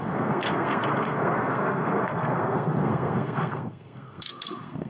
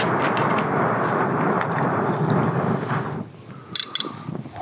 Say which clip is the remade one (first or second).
first